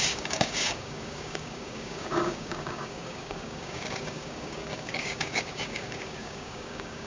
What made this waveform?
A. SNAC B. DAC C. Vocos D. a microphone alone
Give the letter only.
B